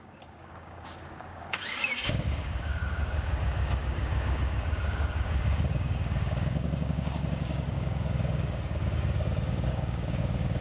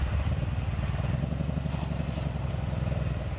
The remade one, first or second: first